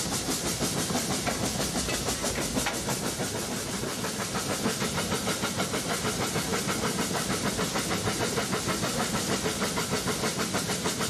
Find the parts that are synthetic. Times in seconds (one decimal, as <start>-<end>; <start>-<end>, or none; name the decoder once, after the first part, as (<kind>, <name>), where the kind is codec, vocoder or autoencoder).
none